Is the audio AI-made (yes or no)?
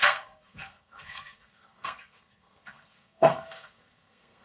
yes